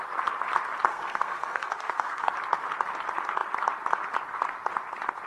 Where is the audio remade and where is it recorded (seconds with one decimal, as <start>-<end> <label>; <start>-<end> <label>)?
0.0-0.9 recorded; 0.9-2.3 remade; 2.3-5.3 recorded